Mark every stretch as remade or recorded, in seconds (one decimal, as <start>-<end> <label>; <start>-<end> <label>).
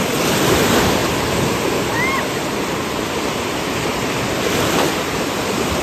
0.0-5.8 recorded